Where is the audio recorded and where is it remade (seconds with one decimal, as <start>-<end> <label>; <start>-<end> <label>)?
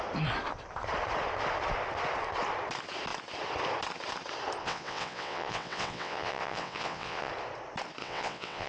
0.0-4.6 recorded; 4.6-7.3 remade; 7.3-8.0 recorded; 8.0-8.7 remade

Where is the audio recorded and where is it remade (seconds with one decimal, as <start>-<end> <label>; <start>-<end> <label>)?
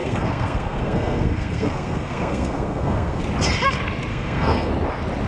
0.0-3.2 remade; 3.2-4.1 recorded; 4.1-4.7 remade; 4.7-5.3 recorded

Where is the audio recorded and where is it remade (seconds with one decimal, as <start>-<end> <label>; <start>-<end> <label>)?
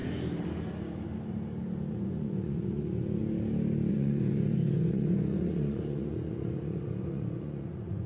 0.0-1.9 recorded; 1.9-3.2 remade; 3.2-3.9 recorded; 3.9-8.1 remade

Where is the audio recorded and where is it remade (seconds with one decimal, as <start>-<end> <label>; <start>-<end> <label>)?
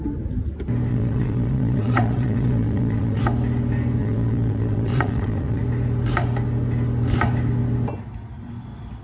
0.0-0.9 recorded; 0.9-3.2 remade; 3.2-4.0 recorded; 4.0-5.6 remade; 5.6-9.0 recorded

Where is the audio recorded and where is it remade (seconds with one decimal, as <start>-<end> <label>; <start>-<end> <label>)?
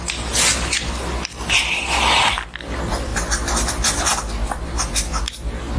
0.0-5.8 recorded